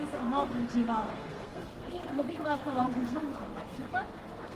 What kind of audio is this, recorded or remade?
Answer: remade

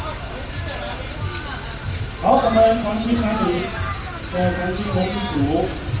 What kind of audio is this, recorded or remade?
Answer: remade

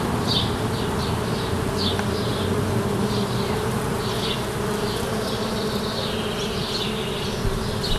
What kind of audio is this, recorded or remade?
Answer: recorded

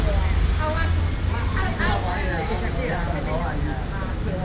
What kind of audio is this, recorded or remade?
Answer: recorded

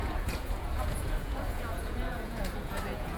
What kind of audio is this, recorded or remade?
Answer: remade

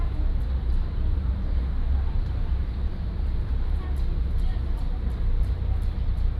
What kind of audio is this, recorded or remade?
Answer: remade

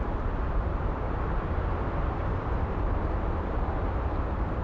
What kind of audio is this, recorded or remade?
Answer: recorded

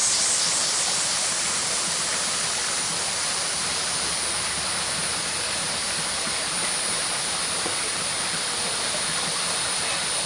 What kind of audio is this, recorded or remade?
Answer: recorded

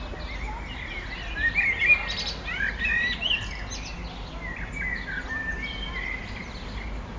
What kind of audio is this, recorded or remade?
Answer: recorded